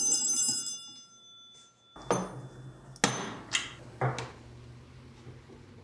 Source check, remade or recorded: recorded